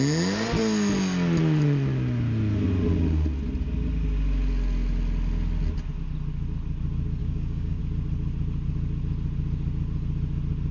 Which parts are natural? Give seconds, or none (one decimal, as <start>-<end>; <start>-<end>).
0.0-7.2; 7.8-10.7